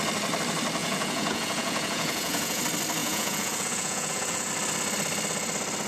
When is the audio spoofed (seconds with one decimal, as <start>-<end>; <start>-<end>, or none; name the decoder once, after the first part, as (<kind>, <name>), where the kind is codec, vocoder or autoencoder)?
0.8-2.6 (vocoder, Vocos); 3.0-4.5